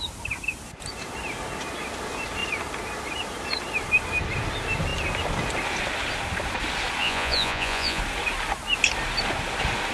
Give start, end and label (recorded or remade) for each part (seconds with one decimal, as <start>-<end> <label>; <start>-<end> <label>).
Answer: 0.0-7.0 recorded; 7.0-8.0 remade; 8.0-9.9 recorded